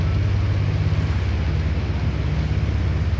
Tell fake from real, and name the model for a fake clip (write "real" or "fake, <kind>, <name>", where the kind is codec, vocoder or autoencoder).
real